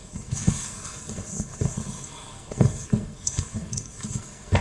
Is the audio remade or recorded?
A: remade